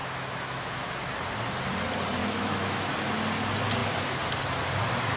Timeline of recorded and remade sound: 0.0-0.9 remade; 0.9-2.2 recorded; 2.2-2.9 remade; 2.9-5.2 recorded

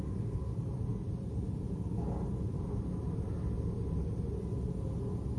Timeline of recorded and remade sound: 0.0-5.4 recorded

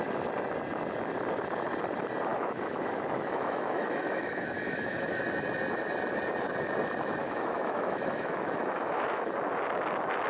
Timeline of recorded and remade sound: 0.0-2.3 recorded; 2.3-5.2 remade; 5.2-7.2 recorded; 7.2-9.3 remade; 9.3-10.3 recorded

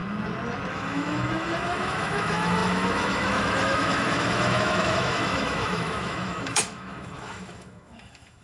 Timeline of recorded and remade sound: 0.0-0.7 recorded; 0.7-8.4 remade

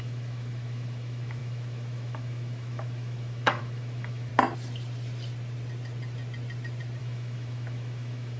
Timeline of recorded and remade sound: 0.0-4.3 remade; 4.3-7.0 recorded; 7.0-8.4 remade

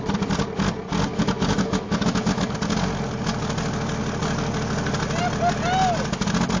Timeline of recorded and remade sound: 0.0-1.1 recorded; 1.1-2.4 remade; 2.4-6.6 recorded